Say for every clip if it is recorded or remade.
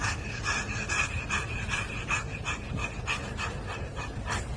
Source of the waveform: recorded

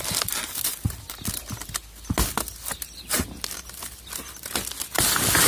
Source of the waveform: recorded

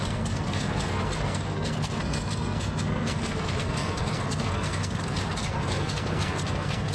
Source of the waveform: remade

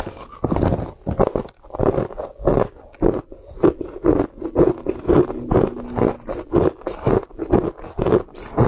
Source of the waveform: recorded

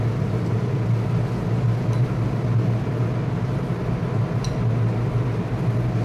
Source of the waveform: recorded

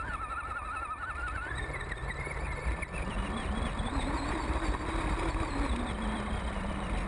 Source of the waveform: recorded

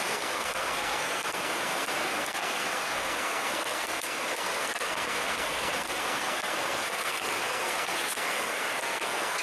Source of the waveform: remade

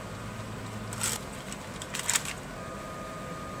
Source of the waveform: recorded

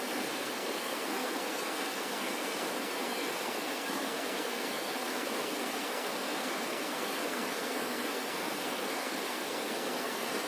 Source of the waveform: remade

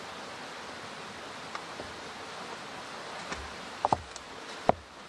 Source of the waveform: recorded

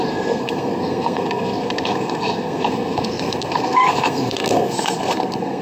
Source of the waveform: remade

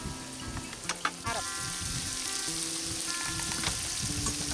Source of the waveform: recorded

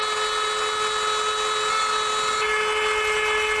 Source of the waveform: recorded